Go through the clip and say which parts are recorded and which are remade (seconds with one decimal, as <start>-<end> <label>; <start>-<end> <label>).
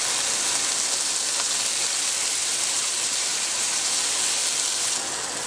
0.0-2.4 recorded; 2.4-3.9 remade; 3.9-5.5 recorded